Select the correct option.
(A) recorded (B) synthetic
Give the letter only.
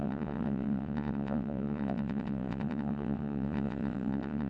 B